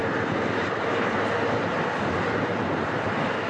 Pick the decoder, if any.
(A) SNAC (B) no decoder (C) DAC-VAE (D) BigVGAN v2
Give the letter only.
B